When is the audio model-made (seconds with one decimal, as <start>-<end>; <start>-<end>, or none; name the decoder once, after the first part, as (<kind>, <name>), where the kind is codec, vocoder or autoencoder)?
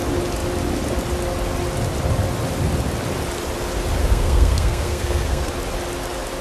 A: 4.0-5.5 (codec, SNAC)